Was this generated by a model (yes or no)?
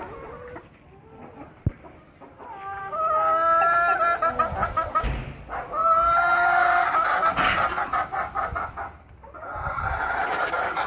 no